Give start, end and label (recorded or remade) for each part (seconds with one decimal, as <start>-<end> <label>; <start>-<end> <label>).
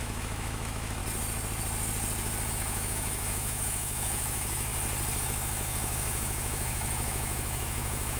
0.0-1.0 remade; 1.0-2.5 recorded; 2.5-4.7 remade; 4.7-5.2 recorded; 5.2-8.2 remade